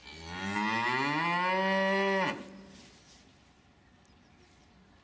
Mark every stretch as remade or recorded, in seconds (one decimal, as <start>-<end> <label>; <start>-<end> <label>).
0.0-5.0 recorded